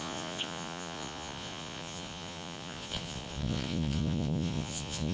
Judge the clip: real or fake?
fake